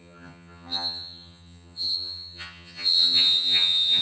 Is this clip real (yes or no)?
no